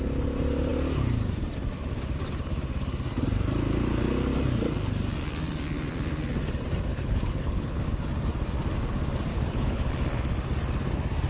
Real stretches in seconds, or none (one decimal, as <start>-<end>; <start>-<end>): 0.0-6.9; 7.8-9.3; 9.9-11.3

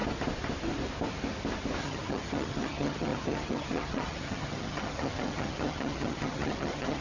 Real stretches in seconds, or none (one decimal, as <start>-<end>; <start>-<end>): 0.0-1.8

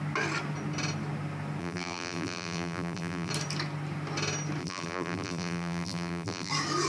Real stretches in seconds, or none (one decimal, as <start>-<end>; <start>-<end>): 0.0-1.6; 3.3-4.6; 6.5-6.9

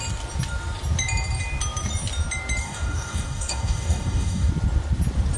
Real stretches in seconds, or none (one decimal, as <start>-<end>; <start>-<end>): 0.0-2.6; 4.5-5.4

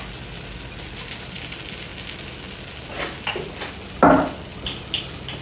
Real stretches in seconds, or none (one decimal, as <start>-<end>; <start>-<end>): 0.0-5.4

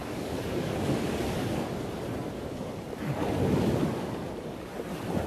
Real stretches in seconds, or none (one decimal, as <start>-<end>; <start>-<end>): 1.8-2.2; 4.7-5.3